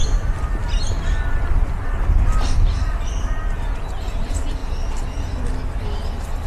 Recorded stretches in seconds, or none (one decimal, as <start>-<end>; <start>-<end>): 0.0-6.5